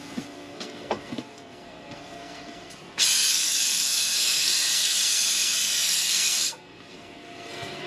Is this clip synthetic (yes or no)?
yes